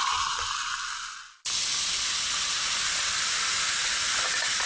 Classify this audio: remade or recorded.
recorded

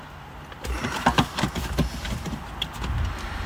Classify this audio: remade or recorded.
recorded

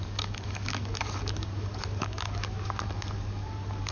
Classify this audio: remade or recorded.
remade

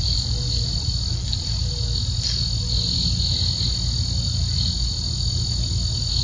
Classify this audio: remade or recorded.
recorded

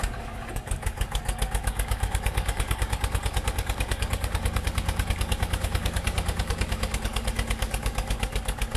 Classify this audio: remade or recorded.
remade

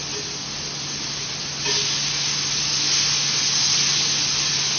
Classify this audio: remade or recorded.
recorded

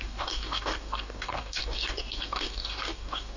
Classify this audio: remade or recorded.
remade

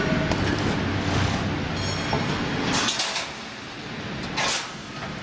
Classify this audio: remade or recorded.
recorded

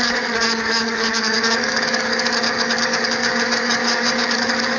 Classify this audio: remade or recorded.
remade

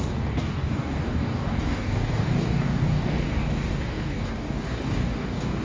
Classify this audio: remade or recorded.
remade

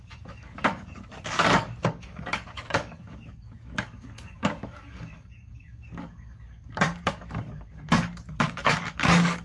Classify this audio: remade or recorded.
remade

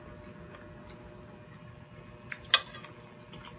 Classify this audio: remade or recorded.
recorded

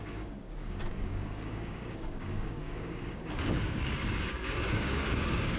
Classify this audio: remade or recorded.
remade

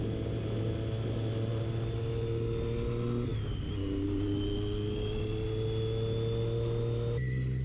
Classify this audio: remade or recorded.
recorded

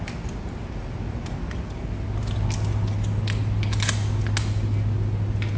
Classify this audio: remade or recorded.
recorded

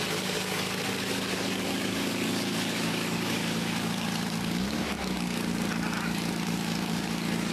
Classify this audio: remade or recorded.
remade